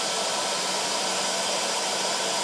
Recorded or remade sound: recorded